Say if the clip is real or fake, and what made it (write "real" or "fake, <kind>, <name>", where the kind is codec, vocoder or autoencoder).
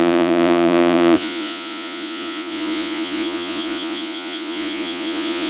fake, vocoder, Vocos